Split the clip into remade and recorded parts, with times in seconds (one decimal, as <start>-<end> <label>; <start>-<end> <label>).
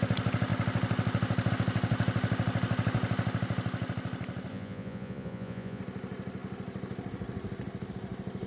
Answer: 0.0-4.5 recorded; 4.5-5.8 remade; 5.8-8.5 recorded